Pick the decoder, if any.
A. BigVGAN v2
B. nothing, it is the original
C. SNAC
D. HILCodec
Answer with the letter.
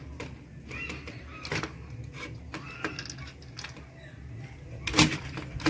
B